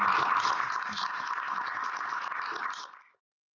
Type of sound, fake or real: real